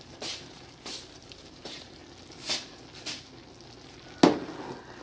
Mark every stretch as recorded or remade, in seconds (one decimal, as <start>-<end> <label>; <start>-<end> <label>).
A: 0.0-2.0 remade; 2.0-5.0 recorded